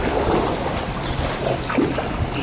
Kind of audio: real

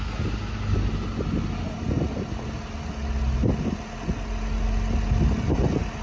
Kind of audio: real